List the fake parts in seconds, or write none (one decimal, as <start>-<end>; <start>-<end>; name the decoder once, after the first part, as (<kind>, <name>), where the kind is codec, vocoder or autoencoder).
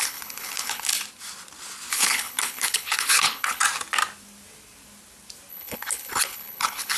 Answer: 0.0-0.9 (codec, HILCodec); 1.9-3.6; 5.5-7.0